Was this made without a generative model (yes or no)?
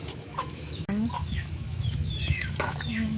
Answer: no